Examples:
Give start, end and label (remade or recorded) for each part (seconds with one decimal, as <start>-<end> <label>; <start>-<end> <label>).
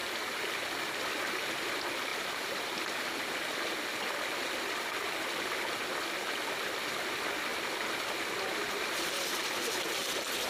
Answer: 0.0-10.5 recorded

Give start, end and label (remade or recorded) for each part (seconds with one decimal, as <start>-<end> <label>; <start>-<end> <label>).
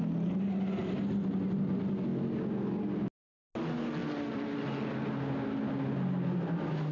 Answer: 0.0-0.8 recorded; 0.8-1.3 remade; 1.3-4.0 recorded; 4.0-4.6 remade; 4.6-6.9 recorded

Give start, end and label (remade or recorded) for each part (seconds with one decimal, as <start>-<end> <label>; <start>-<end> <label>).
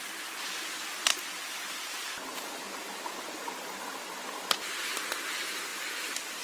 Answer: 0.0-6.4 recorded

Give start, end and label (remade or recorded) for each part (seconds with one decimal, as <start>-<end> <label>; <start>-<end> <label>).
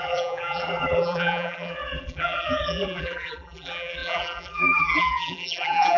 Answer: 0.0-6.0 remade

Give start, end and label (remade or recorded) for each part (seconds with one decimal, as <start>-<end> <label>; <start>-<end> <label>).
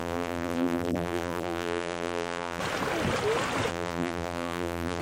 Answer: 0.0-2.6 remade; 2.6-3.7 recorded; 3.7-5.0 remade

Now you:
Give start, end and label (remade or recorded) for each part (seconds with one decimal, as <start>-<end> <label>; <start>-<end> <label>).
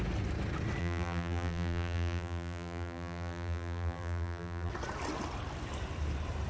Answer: 0.0-0.8 recorded; 0.8-4.7 remade; 4.7-6.5 recorded